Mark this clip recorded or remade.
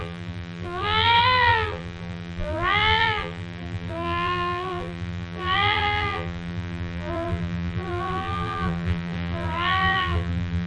remade